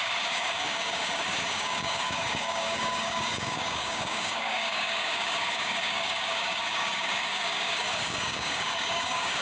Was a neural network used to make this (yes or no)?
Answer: yes